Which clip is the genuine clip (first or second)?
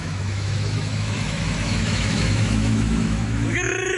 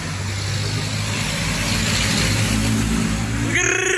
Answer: second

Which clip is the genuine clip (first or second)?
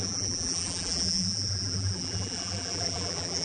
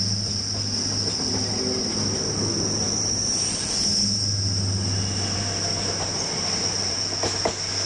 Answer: second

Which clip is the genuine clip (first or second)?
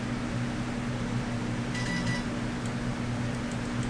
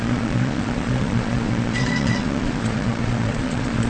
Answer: first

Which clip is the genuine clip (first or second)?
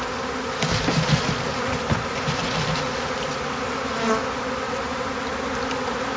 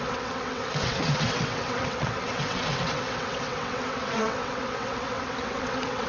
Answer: first